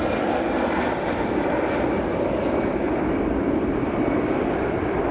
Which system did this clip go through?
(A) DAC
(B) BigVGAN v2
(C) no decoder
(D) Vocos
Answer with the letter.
C